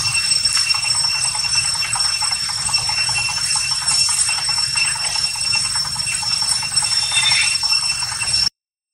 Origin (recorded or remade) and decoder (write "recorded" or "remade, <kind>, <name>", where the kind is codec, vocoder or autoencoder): remade, vocoder, BigVGAN v2